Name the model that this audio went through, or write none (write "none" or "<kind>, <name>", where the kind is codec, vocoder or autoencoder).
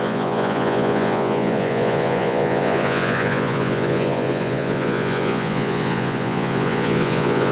vocoder, Vocos